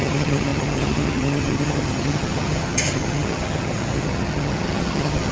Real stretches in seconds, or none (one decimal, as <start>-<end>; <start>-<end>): none